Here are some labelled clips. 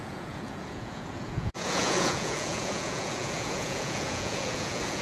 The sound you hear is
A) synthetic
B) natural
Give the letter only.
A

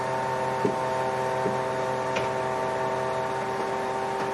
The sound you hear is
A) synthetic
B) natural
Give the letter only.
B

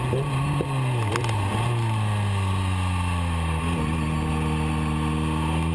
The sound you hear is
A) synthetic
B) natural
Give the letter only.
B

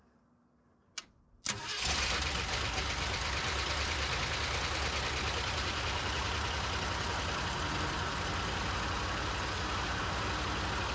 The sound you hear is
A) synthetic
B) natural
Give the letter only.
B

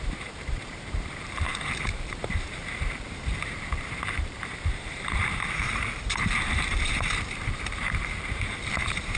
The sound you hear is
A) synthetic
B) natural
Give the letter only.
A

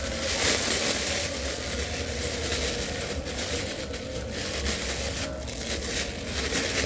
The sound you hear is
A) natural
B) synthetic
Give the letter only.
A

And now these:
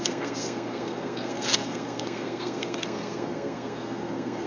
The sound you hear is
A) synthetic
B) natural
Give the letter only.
A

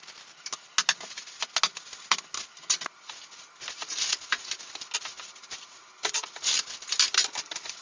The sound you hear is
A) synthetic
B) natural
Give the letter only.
B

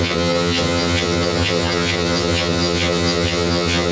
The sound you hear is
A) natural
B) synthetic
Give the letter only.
B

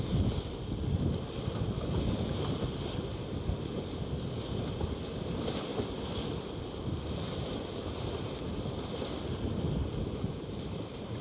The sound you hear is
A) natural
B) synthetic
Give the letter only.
A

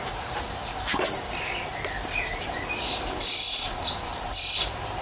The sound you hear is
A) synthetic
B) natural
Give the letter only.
A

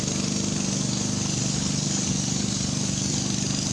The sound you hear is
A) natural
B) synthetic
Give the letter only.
A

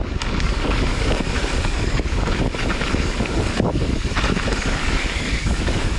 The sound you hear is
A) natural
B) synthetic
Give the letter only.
B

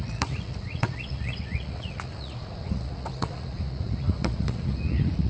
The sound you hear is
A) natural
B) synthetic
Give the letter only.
B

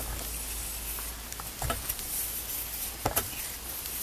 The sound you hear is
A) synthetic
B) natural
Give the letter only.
B